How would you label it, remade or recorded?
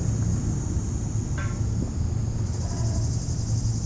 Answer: recorded